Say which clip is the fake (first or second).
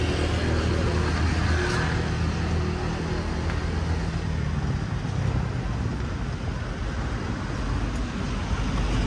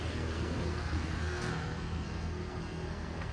second